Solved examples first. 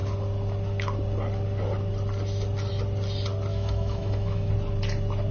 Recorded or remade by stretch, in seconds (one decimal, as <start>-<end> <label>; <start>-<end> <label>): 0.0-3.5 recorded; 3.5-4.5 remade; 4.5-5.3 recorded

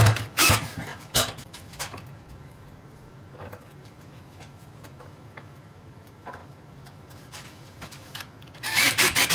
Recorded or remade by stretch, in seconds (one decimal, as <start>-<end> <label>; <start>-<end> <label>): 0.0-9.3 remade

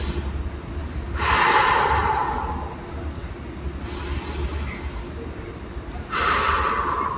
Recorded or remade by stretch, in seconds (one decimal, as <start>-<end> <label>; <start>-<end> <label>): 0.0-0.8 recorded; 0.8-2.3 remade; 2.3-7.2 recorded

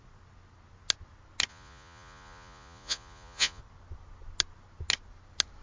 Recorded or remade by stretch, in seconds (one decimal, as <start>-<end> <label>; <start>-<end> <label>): 0.0-1.5 recorded; 1.5-3.6 remade; 3.6-5.6 recorded

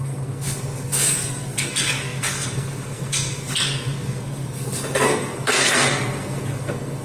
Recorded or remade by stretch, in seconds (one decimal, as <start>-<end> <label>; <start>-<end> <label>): 0.0-7.0 remade